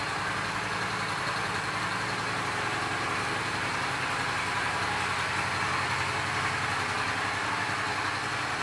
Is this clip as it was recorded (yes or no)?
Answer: yes